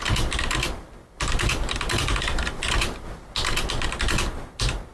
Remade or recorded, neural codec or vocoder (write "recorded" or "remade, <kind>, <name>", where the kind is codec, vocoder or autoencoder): recorded